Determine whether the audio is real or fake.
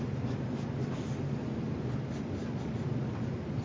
real